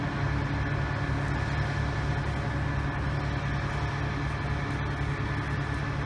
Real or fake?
real